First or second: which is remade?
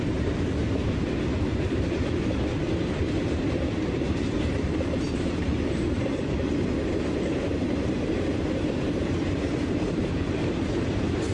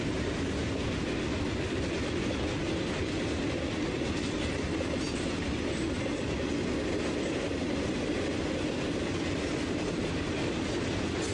first